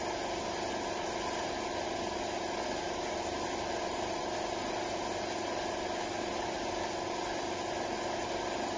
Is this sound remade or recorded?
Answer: recorded